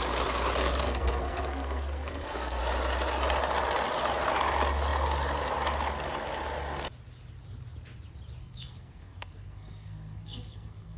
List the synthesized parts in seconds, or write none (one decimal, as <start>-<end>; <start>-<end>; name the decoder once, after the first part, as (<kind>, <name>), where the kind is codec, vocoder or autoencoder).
0.8-2.6 (codec, SNAC); 8.4-11.0